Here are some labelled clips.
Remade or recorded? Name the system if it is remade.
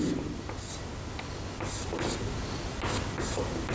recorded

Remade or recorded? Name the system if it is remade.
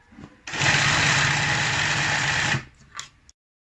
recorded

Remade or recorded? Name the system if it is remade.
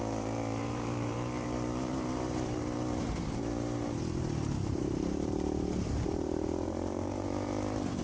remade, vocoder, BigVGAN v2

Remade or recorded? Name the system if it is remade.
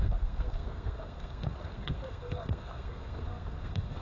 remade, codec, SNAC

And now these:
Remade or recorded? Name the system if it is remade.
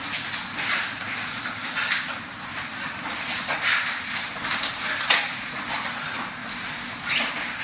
recorded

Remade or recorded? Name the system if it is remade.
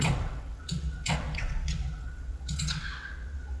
remade, vocoder, WaveNeXt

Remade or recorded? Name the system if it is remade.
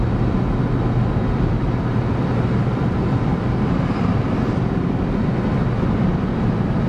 recorded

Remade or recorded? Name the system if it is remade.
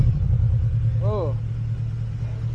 recorded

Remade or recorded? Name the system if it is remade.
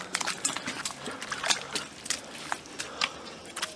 recorded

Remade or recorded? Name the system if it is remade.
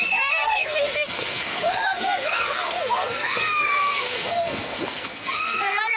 remade, codec, SNAC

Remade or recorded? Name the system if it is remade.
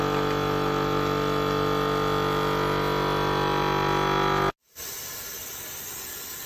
recorded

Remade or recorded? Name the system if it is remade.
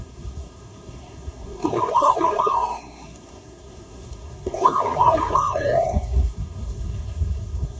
remade, codec, SNAC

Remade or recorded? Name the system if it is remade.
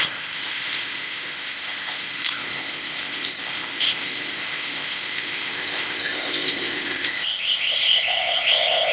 remade, codec, ZipCodec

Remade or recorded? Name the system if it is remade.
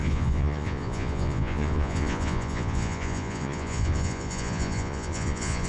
remade, vocoder, Vocos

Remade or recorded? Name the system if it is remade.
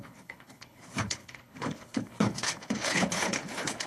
remade, codec, HILCodec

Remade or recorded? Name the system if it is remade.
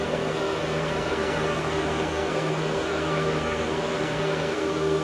remade, codec, SNAC